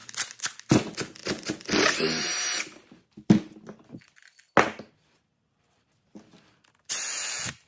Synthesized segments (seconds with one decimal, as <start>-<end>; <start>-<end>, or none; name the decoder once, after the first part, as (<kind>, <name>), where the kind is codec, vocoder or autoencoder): 0.0-0.7 (vocoder, BigVGAN v2)